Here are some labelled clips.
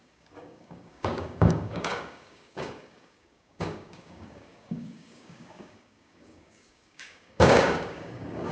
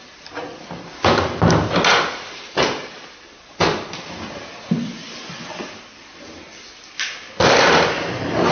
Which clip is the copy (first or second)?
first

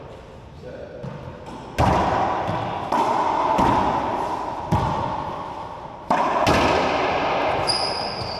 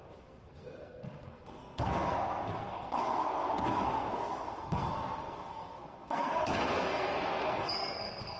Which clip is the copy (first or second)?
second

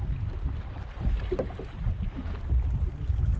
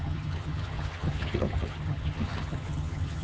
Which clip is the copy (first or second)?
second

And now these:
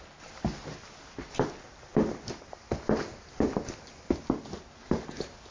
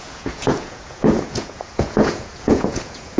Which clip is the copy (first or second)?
second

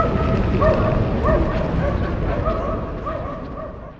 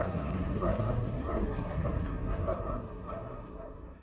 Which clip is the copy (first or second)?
second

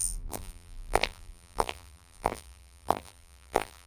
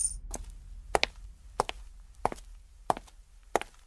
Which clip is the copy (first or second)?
first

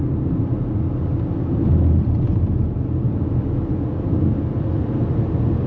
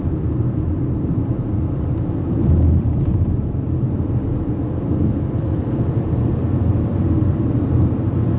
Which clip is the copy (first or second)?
second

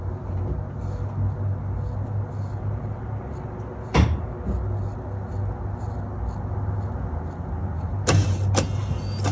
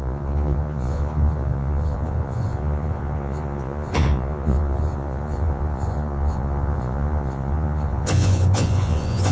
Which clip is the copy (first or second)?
second